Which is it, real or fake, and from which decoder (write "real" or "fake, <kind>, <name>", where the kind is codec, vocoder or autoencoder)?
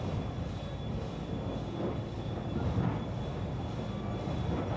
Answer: real